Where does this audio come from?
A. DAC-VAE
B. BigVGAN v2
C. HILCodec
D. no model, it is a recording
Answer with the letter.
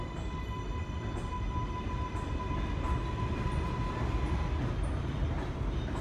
D